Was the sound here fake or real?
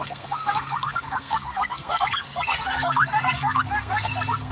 fake